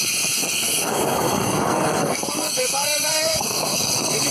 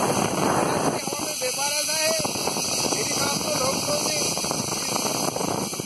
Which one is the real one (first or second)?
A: second